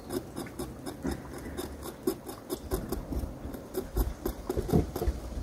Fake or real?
real